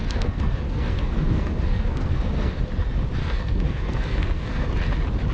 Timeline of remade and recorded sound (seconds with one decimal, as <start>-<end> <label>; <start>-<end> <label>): 0.0-2.6 remade; 2.6-3.2 recorded; 3.2-4.7 remade; 4.7-5.3 recorded